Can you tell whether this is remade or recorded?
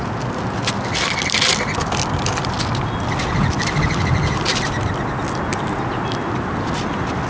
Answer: recorded